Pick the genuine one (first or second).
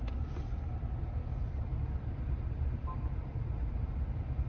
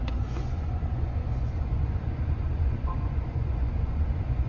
first